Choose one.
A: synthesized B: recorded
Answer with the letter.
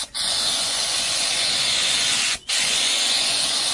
A